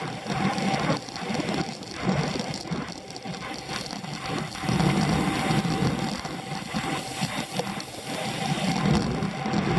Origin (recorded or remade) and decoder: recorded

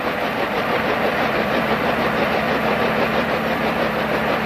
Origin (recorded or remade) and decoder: remade, vocoder, BigVGAN v2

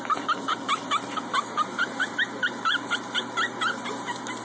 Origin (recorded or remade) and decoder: remade, vocoder, BigVGAN v2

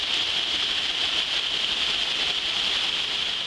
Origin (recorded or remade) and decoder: recorded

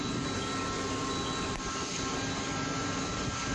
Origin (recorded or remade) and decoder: recorded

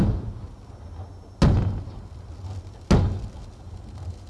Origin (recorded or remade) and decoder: recorded